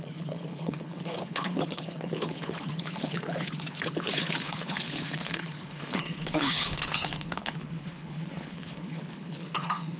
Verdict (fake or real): fake